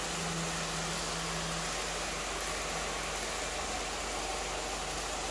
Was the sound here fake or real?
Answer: real